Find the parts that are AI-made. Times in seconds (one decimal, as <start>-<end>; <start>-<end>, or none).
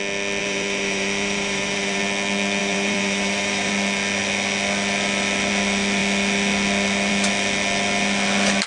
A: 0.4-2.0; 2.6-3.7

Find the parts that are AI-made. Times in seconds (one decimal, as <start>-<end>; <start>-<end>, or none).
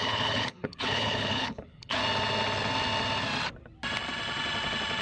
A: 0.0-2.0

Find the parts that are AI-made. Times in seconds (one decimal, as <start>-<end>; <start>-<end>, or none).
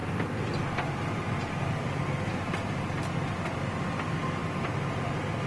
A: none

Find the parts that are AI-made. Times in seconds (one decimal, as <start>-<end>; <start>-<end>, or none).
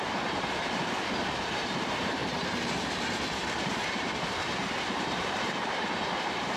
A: 0.0-0.8; 1.4-2.2; 3.7-6.6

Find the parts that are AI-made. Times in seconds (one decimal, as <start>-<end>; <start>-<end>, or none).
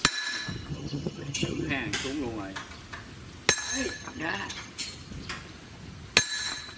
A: 0.7-1.7; 3.6-4.7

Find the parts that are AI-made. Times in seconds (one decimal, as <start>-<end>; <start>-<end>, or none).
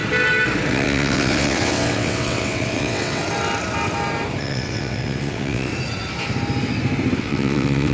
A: 0.7-3.2; 4.4-5.7; 7.2-7.9